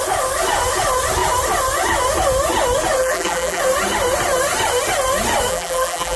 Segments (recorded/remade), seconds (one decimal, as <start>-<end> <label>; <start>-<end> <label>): 0.0-3.0 recorded; 3.0-3.6 remade; 3.6-5.5 recorded; 5.5-6.2 remade